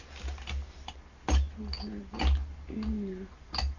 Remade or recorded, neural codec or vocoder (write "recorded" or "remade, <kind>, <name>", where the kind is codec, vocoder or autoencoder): recorded